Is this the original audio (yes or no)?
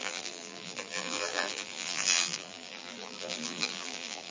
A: no